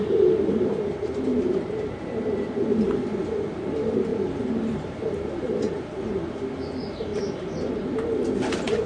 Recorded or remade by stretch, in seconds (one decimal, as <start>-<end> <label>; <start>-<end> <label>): 0.0-1.3 recorded; 1.3-2.0 remade; 2.0-4.1 recorded; 4.1-5.5 remade; 5.5-8.9 recorded